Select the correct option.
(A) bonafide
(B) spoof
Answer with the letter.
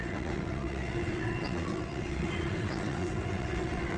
B